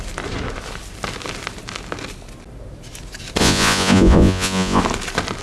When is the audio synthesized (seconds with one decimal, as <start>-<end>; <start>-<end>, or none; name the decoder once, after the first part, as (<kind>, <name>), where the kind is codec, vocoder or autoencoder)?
3.4-4.8 (vocoder, Vocos)

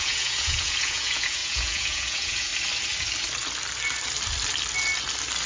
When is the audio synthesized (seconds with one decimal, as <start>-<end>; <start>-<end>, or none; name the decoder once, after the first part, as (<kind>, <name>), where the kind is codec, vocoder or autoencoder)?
0.0-2.5 (vocoder, Vocos)